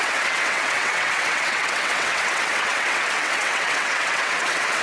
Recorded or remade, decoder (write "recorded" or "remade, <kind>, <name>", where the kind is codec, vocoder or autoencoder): remade, vocoder, WaveNeXt